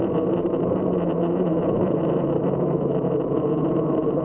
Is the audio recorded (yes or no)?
no